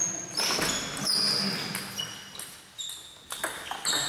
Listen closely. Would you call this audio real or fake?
real